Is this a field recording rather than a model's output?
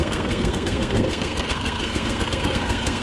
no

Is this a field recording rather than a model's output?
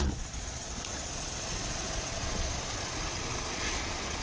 no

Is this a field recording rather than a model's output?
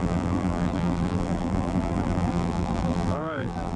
no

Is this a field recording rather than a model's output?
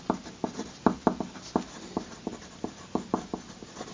yes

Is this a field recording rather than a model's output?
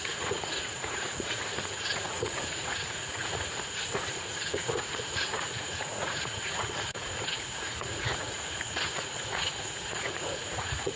no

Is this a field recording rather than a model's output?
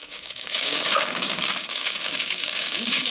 no